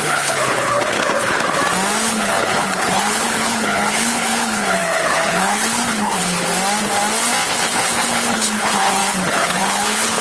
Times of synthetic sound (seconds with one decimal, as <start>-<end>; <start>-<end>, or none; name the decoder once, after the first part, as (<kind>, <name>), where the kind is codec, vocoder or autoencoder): 0.0-1.6 (codec, HILCodec); 2.1-6.5; 7.5-10.2